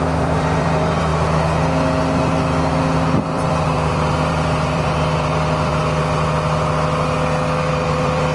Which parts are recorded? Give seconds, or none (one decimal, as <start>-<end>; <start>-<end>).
1.1-3.1; 5.8-7.7